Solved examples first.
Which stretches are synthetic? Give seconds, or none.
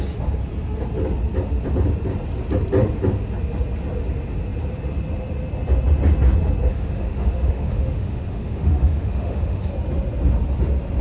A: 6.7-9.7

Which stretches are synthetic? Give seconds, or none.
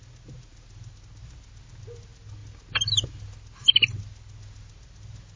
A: none